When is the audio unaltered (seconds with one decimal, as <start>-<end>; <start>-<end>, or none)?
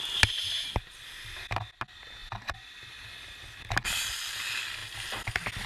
0.0-5.7